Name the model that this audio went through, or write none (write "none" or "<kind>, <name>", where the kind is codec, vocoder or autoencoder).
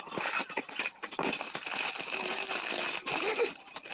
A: vocoder, BigVGAN v2